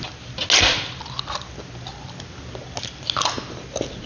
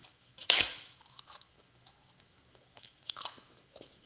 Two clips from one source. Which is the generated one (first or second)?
second